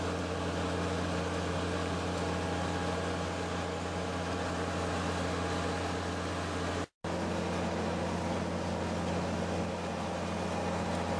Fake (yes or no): no